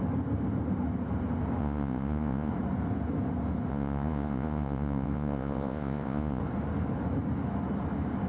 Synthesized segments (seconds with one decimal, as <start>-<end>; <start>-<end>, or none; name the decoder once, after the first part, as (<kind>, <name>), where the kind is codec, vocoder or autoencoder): 1.6-2.5 (vocoder, Vocos); 3.7-6.4